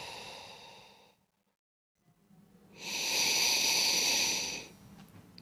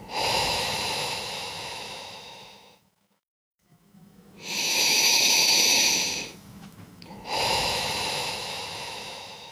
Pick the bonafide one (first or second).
first